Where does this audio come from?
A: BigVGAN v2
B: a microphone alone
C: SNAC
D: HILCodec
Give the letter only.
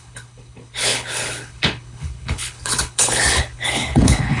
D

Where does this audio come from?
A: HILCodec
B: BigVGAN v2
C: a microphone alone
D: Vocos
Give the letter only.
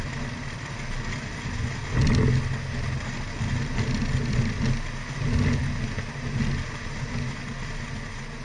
C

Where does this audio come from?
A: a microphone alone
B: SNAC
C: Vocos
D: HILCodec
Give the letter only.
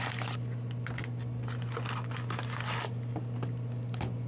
A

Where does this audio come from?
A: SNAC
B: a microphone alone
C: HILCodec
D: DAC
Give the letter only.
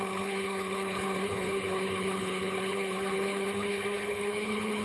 C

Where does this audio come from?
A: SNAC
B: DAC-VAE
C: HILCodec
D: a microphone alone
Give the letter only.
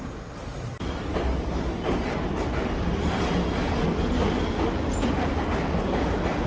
D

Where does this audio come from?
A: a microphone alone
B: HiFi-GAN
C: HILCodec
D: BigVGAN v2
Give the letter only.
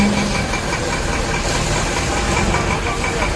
A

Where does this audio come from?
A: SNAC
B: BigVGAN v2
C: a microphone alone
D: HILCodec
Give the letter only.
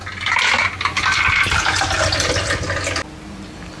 C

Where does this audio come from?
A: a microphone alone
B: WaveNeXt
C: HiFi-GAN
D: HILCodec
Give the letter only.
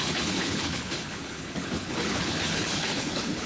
D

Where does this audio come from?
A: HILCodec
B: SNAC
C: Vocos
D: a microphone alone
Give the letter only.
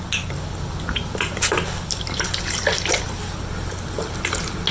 D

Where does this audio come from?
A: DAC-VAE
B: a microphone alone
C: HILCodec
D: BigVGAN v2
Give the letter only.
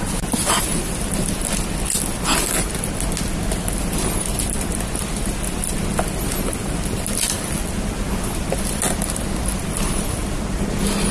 B